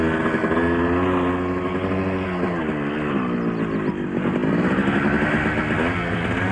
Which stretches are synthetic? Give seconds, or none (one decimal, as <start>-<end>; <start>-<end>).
none